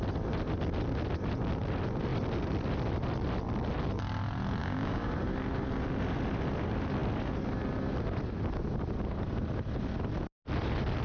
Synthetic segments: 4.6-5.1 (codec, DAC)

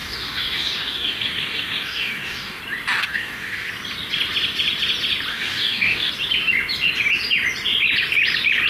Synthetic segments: 0.0-2.6 (codec, DAC); 3.0-3.7; 5.3-6.1

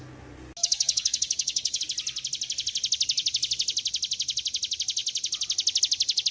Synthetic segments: 0.6-1.8 (codec, DAC)

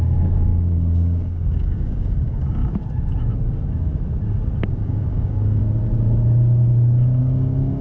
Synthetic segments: 0.0-2.6 (codec, DAC); 4.7-5.6; 7.2-7.8

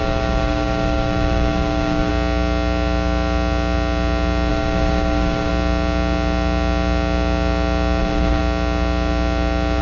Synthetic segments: 0.0-2.1 (codec, DAC); 4.5-5.5; 8.0-8.4

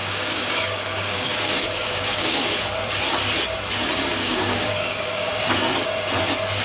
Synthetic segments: 0.0-2.5 (codec, DAC); 4.1-5.5

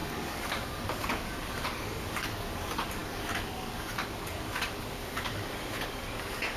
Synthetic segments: 0.0-6.6 (codec, DAC)

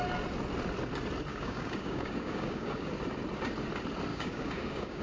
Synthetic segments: 1.3-2.9 (codec, DAC); 4.1-5.0